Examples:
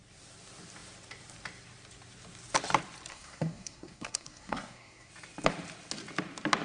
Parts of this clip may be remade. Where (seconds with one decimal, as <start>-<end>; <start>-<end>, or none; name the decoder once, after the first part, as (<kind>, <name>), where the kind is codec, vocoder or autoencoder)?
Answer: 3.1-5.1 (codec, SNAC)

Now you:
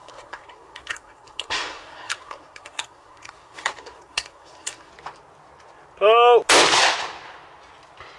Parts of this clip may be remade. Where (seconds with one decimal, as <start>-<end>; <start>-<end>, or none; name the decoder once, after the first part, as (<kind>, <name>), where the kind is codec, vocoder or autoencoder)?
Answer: 0.0-4.9 (codec, SNAC)

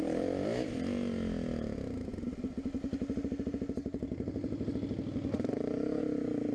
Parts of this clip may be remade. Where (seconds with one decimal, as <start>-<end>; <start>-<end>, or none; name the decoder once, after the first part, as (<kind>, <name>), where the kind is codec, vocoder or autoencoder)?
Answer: none

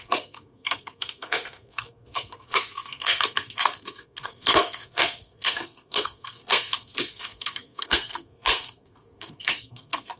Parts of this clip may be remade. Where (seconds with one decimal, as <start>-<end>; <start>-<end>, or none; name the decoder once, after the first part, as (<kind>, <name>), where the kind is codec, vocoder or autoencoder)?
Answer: 0.0-10.2 (codec, SNAC)

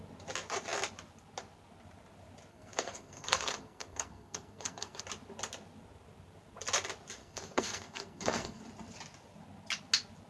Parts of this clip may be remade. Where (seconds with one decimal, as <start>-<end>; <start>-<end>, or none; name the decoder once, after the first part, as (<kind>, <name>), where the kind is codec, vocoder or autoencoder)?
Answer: 2.5-5.0 (codec, SNAC); 7.2-8.6

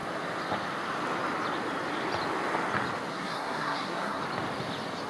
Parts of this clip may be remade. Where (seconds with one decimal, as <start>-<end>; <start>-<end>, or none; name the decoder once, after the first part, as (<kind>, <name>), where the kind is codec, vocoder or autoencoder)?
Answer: 3.1-4.2 (codec, SNAC)